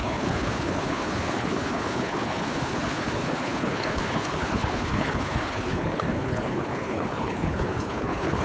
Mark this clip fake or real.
fake